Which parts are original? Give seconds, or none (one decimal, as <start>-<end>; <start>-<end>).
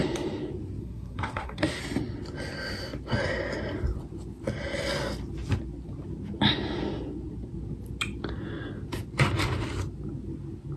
0.0-0.8; 1.8-10.8